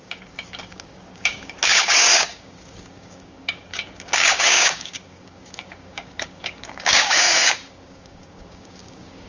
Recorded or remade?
remade